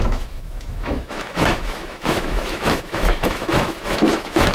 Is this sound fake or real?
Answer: fake